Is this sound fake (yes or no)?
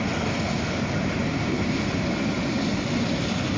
no